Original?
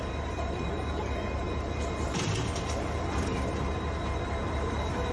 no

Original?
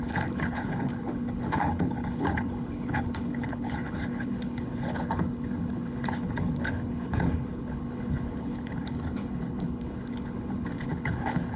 no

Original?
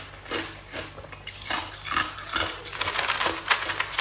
yes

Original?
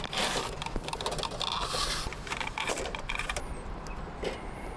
yes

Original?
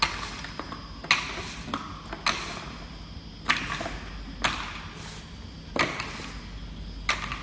yes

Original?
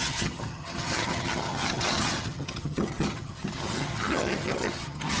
no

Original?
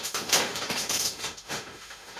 no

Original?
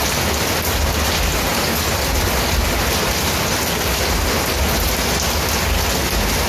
yes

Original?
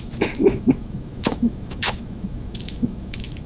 no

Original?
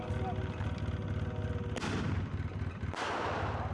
yes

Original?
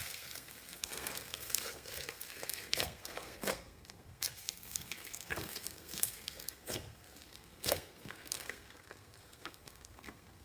no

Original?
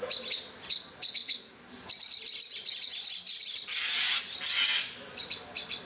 yes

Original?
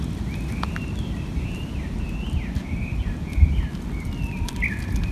yes